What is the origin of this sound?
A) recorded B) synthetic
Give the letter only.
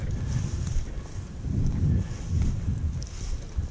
A